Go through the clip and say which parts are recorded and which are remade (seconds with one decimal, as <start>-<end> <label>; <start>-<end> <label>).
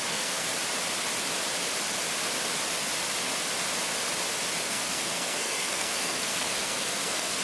0.0-0.5 remade; 0.5-4.6 recorded; 4.6-7.4 remade